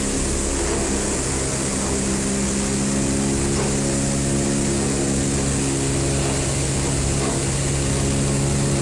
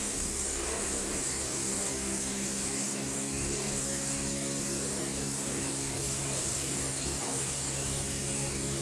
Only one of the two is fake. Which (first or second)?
second